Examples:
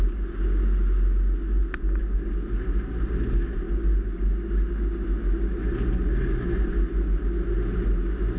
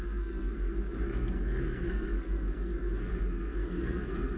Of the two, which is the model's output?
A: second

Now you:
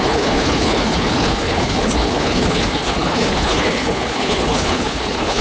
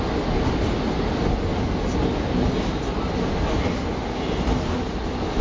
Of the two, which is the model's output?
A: first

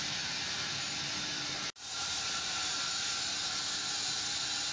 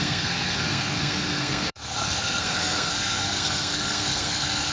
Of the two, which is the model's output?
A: second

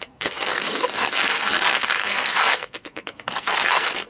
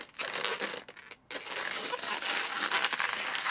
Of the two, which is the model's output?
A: first